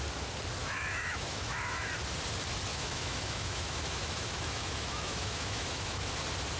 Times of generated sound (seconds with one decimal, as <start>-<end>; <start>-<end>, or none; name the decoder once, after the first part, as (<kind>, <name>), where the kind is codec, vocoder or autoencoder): 0.6-1.9 (autoencoder, DAC-VAE); 2.7-6.1